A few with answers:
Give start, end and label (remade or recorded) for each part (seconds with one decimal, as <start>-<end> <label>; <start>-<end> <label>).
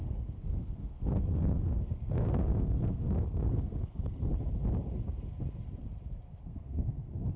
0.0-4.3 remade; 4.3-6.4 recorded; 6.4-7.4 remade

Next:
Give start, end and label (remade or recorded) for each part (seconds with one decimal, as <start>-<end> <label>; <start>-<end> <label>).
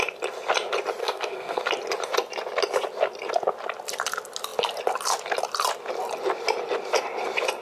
0.0-1.0 recorded; 1.0-1.6 remade; 1.6-7.6 recorded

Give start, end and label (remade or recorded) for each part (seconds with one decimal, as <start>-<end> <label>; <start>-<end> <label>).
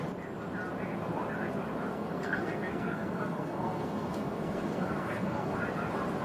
0.0-1.9 recorded; 1.9-5.6 remade; 5.6-6.2 recorded